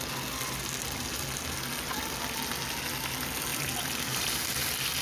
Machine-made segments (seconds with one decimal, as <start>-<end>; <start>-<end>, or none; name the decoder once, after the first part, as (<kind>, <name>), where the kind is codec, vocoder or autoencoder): none

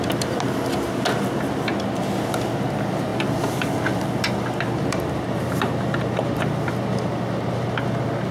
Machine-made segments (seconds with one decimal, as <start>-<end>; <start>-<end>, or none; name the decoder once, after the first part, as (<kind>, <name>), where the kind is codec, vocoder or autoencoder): none

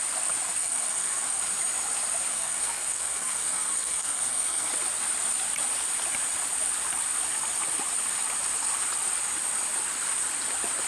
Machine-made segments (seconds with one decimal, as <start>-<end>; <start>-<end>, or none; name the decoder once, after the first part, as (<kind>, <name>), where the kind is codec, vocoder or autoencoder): 0.6-1.4 (codec, SNAC); 2.3-4.7

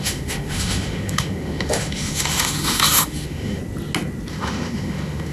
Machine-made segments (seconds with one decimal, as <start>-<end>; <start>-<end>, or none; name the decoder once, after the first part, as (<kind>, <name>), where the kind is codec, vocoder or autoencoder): 0.0-3.6 (autoencoder, DAC-VAE); 4.3-5.3

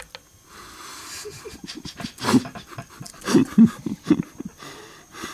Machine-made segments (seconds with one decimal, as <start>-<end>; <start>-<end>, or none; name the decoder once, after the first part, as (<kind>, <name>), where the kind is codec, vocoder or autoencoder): none

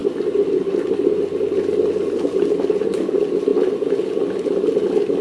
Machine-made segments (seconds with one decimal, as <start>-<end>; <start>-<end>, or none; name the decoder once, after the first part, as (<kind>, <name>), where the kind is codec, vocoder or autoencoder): none

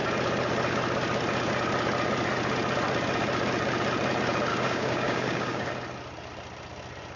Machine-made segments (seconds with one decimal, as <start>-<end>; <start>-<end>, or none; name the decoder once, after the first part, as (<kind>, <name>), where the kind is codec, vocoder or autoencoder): 4.5-5.7 (codec, DAC)

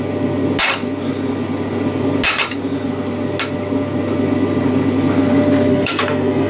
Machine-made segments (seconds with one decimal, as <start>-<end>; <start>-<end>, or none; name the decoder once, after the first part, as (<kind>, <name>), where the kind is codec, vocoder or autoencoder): 5.7-6.5 (codec, SNAC)